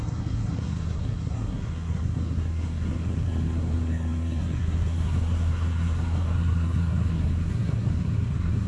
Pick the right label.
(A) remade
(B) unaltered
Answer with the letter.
A